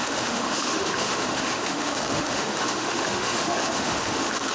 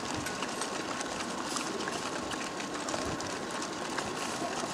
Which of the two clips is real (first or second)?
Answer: second